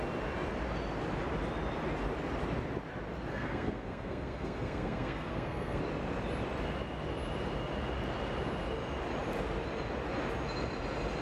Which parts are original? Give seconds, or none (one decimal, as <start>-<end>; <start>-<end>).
0.0-3.3; 5.8-11.2